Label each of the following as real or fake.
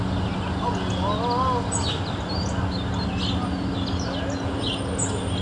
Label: real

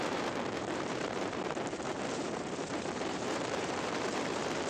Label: fake